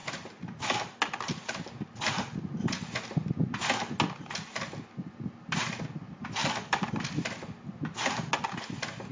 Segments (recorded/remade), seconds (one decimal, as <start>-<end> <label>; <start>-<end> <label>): 0.0-0.6 remade; 0.6-6.4 recorded; 6.4-6.9 remade; 6.9-9.1 recorded